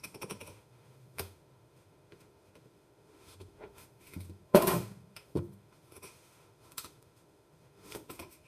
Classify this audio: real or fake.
fake